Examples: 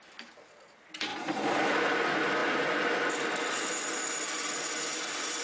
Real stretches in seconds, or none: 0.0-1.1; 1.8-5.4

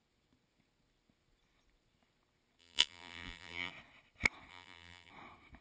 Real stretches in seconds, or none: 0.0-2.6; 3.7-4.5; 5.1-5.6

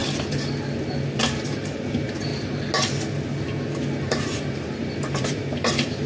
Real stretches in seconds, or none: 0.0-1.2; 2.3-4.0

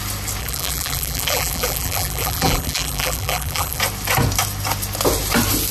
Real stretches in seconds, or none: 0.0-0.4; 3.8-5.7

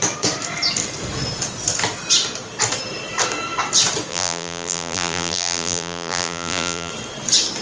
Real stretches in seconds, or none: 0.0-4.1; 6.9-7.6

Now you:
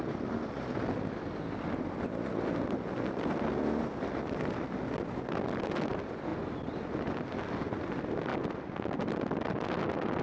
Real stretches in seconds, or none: 0.0-10.2

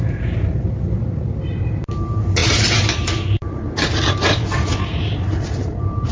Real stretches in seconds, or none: 0.0-2.4; 3.9-6.1

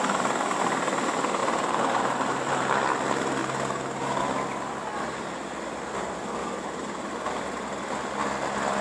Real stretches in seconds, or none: 0.0-1.4; 2.9-3.4; 4.2-6.4; 7.9-8.8